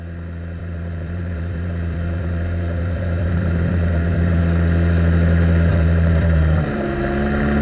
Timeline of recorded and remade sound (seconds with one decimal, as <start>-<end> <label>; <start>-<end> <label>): 0.0-0.6 recorded; 0.6-4.4 remade; 4.4-5.7 recorded; 5.7-7.0 remade; 7.0-7.6 recorded